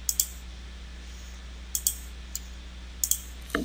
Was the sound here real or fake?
real